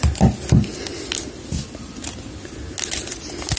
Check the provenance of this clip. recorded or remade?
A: recorded